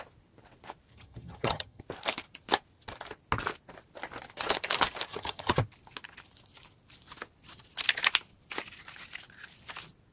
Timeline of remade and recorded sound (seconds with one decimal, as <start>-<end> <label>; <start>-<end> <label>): 0.0-0.9 recorded; 0.9-1.8 remade; 1.8-5.1 recorded; 5.1-5.6 remade; 5.6-10.1 recorded